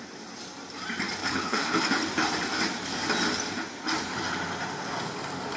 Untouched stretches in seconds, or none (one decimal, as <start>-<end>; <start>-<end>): 0.0-1.2; 1.8-5.6

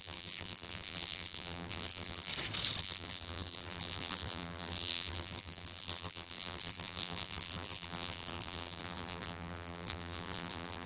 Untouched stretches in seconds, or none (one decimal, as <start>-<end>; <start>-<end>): 2.3-2.8

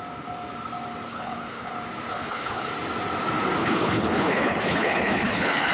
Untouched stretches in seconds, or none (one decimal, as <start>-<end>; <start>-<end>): 0.0-1.1; 1.7-2.1; 2.7-3.6

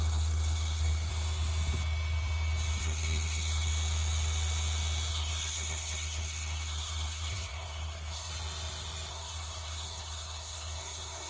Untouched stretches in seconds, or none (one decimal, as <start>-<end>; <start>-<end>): 1.1-2.8; 3.7-5.1; 8.3-9.1

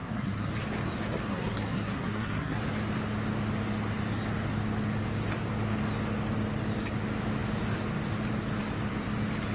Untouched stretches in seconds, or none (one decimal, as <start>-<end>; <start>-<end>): 0.5-1.3; 2.6-9.5

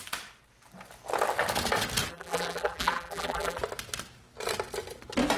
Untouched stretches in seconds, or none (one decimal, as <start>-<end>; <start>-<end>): 0.0-2.1; 3.6-5.4

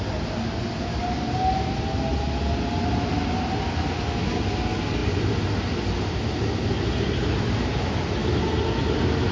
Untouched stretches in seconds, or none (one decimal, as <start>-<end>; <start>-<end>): 0.0-9.3

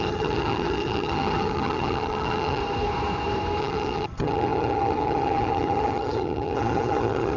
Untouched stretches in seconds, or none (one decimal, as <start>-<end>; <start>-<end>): 2.6-3.6